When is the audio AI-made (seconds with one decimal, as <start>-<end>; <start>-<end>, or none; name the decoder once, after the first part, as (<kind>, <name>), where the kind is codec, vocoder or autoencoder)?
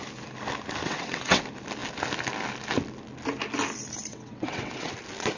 0.8-1.4 (vocoder, WaveNeXt); 4.1-4.9